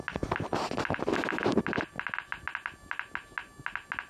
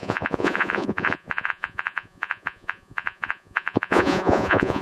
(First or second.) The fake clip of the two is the second